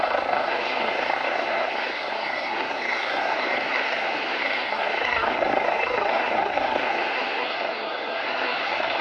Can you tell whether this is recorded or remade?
remade